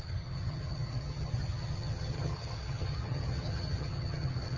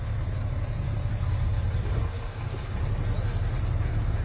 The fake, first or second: first